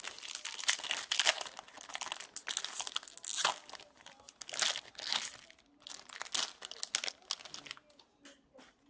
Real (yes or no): yes